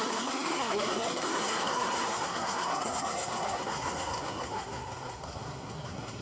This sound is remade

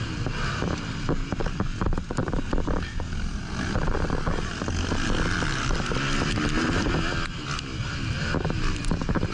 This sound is recorded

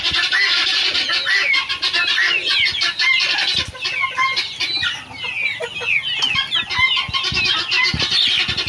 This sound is recorded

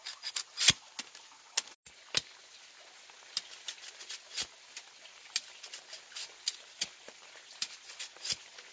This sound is recorded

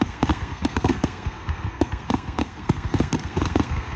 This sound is remade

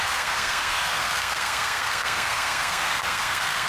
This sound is remade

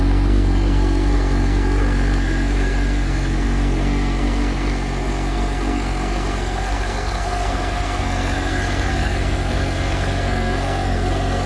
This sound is remade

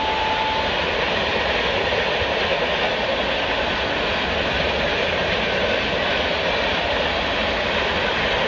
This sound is recorded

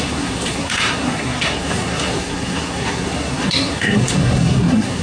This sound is remade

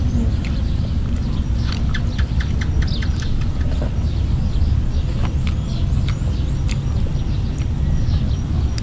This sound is recorded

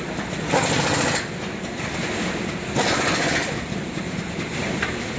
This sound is recorded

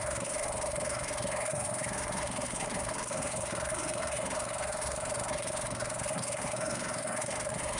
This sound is remade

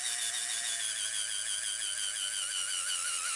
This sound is recorded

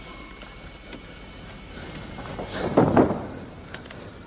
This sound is recorded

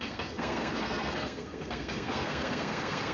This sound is remade